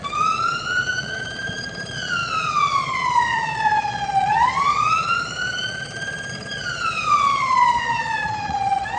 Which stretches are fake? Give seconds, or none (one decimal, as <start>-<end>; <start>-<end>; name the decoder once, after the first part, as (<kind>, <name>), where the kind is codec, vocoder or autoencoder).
0.0-9.0 (vocoder, Vocos)